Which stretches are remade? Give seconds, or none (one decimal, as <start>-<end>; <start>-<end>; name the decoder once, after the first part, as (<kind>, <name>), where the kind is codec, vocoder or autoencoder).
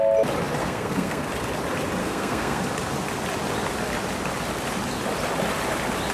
0.6-1.3 (codec, SNAC); 2.0-2.6